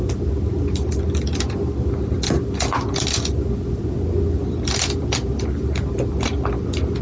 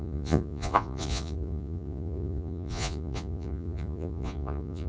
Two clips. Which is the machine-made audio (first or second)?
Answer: second